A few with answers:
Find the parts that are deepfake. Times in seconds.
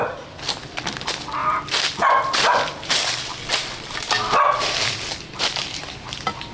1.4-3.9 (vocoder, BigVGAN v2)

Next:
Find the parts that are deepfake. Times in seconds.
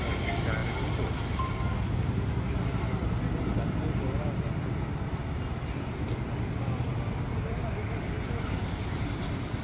none